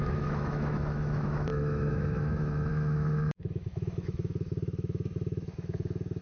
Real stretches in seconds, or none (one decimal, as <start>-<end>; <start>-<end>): none